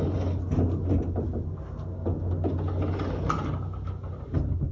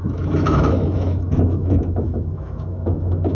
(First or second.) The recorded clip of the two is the first